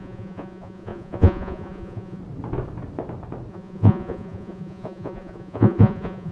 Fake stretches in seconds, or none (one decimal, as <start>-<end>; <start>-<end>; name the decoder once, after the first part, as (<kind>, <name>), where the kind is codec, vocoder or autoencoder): 0.0-2.2 (vocoder, Vocos); 3.5-6.3